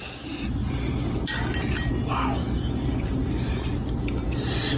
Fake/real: real